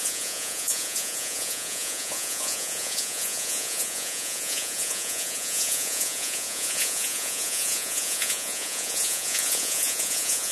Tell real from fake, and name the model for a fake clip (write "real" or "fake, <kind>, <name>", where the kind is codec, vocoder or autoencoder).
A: fake, vocoder, Vocos